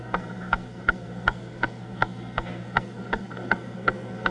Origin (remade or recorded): remade